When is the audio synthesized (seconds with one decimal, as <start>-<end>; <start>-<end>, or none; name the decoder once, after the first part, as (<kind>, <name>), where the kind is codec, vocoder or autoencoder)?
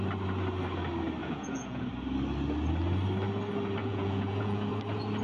1.2-1.9 (vocoder, Vocos); 3.8-4.7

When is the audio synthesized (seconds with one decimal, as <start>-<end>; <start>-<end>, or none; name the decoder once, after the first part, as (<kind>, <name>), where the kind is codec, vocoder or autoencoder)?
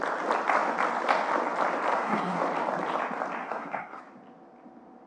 1.9-2.4 (codec, SNAC); 3.4-4.0